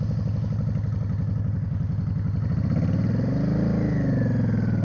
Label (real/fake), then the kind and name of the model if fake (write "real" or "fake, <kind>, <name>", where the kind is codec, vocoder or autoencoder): real